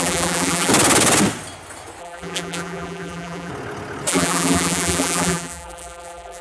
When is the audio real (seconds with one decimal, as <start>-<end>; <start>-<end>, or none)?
0.7-2.0; 3.5-4.1